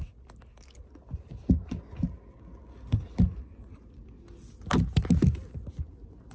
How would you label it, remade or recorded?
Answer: recorded